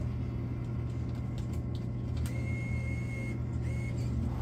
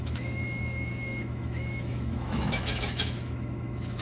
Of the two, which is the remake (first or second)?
second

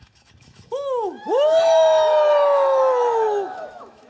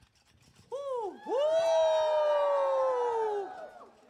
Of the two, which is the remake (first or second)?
first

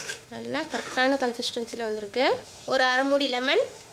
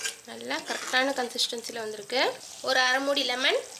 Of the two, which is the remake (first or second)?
first